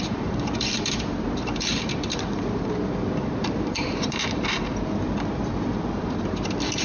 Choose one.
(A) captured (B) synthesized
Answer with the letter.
B